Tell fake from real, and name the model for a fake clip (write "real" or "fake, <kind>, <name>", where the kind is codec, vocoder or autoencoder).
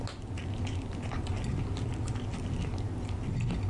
real